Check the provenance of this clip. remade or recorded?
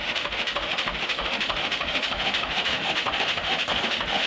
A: remade